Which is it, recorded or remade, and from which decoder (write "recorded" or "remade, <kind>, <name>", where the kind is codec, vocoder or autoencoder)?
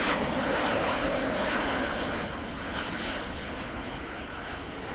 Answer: remade, codec, HILCodec